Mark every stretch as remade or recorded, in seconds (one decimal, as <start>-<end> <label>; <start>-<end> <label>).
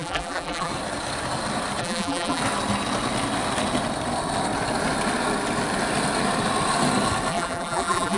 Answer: 0.0-0.7 remade; 0.7-1.8 recorded; 1.8-2.4 remade; 2.4-7.3 recorded; 7.3-8.2 remade